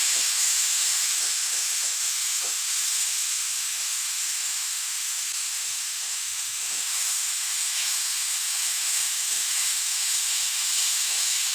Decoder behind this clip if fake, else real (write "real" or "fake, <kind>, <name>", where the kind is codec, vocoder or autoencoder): fake, autoencoder, DAC-VAE